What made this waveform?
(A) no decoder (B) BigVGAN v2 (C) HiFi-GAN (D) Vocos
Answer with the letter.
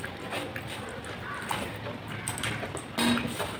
A